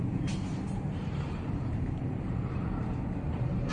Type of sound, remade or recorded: remade